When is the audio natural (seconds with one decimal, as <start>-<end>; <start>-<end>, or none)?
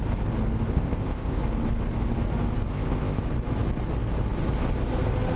0.0-0.7; 1.4-2.7; 3.2-5.4